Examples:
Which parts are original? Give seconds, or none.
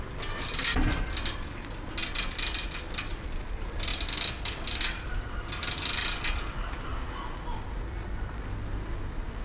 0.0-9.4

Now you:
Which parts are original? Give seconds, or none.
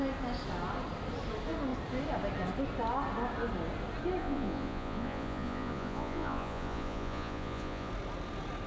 0.0-4.2; 7.9-8.7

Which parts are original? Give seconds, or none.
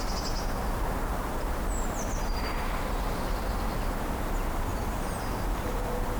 0.0-1.1; 2.8-6.2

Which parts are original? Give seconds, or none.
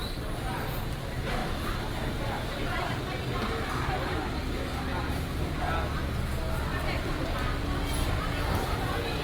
0.0-9.2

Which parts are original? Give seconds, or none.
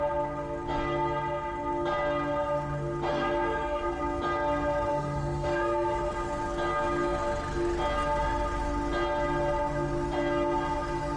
0.0-3.1; 4.0-4.9; 6.1-11.2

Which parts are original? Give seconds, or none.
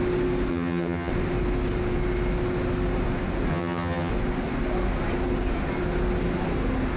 0.0-0.5; 1.1-3.5; 4.1-7.0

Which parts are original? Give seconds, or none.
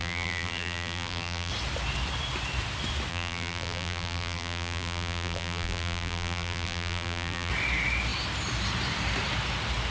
1.5-3.1; 7.5-9.9